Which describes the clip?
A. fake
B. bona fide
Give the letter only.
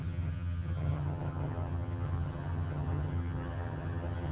A